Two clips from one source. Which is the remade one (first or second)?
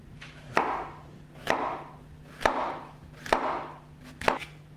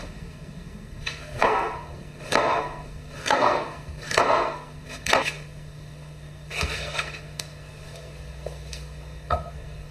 second